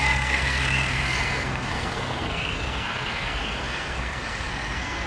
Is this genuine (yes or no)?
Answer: no